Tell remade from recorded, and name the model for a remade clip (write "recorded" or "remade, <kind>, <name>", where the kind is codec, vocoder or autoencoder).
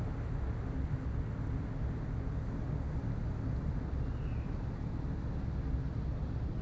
recorded